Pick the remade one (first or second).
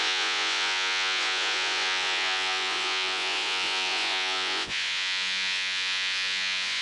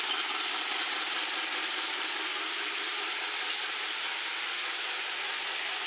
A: first